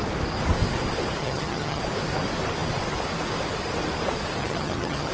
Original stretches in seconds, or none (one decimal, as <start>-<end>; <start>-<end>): 0.0-1.2; 1.8-4.4